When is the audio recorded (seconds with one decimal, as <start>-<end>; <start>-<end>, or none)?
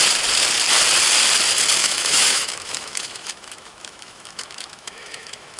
0.0-1.8